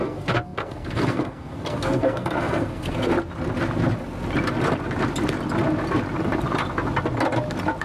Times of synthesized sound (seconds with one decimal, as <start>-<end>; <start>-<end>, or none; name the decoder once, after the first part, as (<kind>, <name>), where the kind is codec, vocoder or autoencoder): 0.0-3.1 (codec, SNAC)

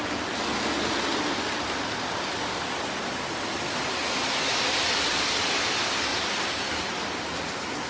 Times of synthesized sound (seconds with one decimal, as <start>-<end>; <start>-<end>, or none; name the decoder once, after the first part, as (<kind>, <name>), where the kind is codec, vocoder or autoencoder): none

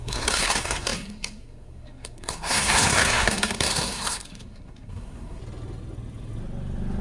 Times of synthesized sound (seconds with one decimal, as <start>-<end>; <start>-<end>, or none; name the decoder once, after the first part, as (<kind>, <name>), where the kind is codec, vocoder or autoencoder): 0.0-5.4 (codec, SNAC)

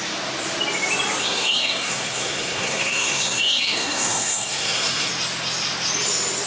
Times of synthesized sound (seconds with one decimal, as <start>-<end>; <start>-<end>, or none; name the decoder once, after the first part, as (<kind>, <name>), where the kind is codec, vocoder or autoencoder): 1.2-5.1 (codec, SNAC)

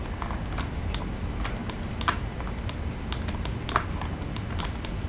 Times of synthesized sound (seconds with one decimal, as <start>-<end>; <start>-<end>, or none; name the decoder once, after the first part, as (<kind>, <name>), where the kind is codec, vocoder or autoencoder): none

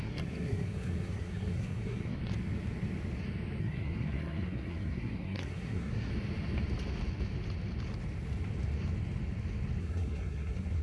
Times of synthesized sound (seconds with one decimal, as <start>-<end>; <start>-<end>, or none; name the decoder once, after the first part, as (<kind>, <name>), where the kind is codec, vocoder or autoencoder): 0.0-2.2 (codec, SNAC); 3.6-6.1; 9.8-10.8